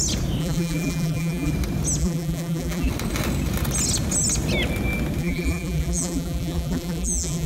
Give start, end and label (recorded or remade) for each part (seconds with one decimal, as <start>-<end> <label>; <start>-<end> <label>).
0.0-0.4 recorded; 0.4-1.5 remade; 1.5-2.0 recorded; 2.0-2.9 remade; 2.9-5.2 recorded; 5.2-7.5 remade